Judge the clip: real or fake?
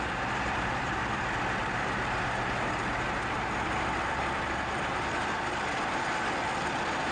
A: fake